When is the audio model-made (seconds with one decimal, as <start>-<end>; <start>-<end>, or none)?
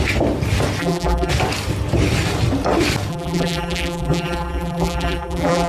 0.8-1.3; 3.1-5.7